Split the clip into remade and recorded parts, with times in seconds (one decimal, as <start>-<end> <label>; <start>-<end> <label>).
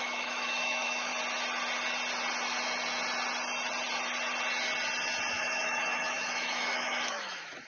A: 0.0-1.1 remade; 1.1-5.3 recorded; 5.3-7.7 remade